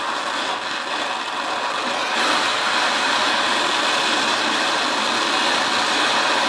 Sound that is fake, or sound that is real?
real